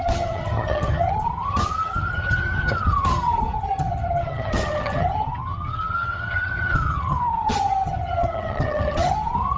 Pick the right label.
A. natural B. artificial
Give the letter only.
B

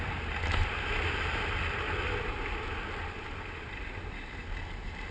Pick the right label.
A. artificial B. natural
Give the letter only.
B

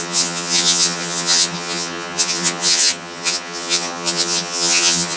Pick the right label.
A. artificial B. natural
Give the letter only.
A